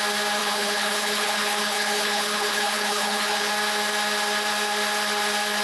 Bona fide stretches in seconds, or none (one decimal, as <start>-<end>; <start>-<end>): 0.0-0.4; 3.5-5.6

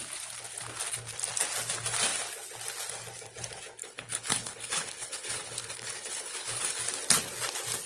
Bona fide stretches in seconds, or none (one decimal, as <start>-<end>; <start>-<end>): 0.0-3.8; 6.8-7.9

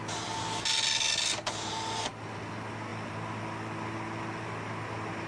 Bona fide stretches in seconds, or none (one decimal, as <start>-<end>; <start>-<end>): 0.0-5.3

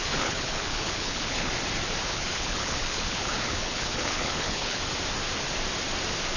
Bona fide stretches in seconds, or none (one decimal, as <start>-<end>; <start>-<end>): 1.5-2.1; 4.8-6.4

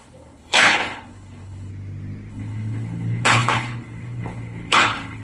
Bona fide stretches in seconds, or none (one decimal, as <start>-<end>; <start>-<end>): 1.7-2.3

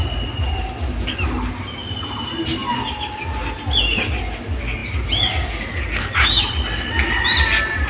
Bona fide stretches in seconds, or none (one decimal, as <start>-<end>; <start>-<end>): 0.0-7.9